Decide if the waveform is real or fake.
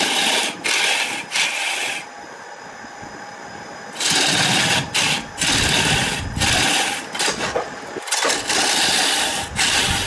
real